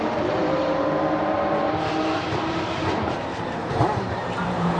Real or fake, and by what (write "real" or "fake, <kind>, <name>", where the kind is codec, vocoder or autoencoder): fake, vocoder, BigVGAN v2